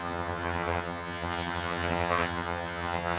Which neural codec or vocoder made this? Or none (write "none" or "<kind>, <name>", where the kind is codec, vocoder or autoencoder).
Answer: vocoder, HiFi-GAN